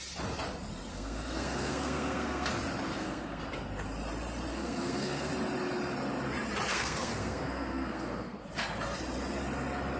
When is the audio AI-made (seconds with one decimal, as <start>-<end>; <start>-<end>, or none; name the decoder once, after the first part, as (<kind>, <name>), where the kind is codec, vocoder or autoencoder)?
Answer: 0.9-2.5 (codec, SNAC); 2.9-3.4; 4.5-5.3; 6.7-8.4